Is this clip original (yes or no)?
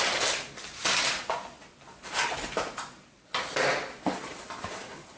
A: no